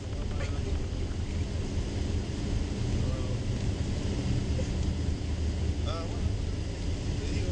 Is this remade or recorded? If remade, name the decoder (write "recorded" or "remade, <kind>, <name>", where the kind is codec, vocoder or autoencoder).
recorded